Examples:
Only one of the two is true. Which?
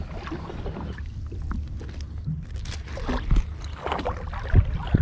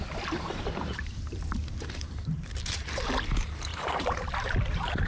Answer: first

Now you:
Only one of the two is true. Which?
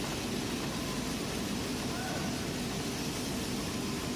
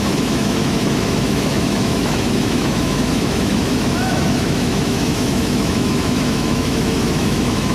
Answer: first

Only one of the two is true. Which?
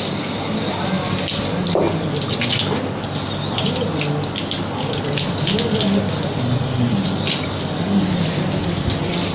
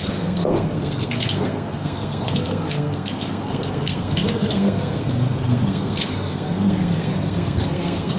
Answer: first